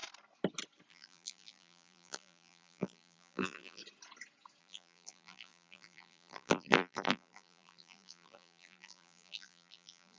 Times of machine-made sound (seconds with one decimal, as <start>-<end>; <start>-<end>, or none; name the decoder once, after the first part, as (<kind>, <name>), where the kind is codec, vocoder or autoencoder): 0.9-3.8 (vocoder, BigVGAN v2); 4.6-10.2